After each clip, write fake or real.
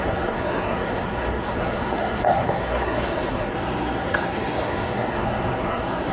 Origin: fake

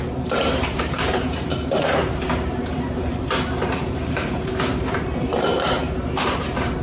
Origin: fake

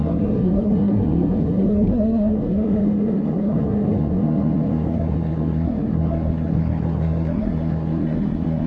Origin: fake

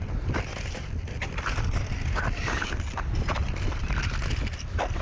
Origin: fake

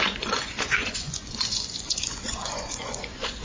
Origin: fake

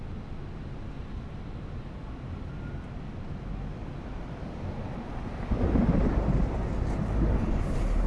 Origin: real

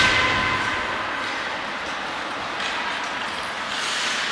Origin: real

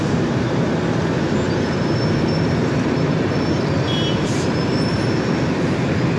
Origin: fake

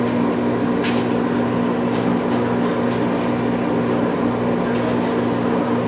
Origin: real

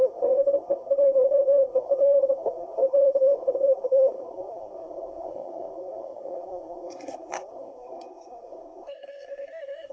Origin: fake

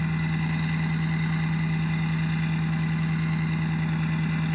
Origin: real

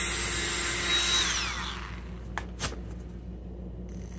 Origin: real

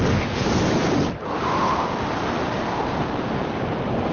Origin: real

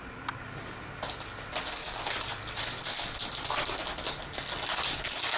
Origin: real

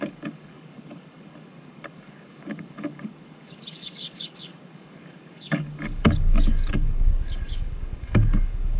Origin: fake